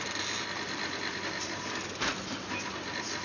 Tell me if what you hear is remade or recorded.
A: remade